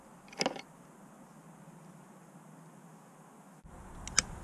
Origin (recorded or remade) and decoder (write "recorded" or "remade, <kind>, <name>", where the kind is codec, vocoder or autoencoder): recorded